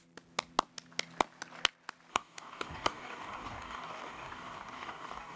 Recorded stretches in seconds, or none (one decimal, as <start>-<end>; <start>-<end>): 0.0-2.1